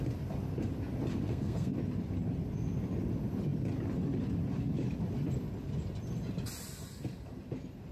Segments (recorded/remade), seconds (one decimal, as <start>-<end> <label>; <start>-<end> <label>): 0.0-1.1 recorded; 1.1-1.7 remade; 1.7-7.9 recorded